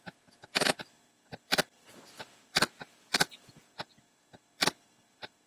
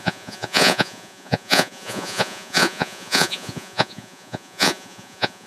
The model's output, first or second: second